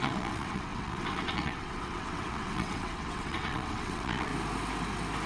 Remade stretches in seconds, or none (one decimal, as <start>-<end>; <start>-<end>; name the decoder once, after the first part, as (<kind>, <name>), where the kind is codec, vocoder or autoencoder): 0.0-4.3 (vocoder, WaveNeXt)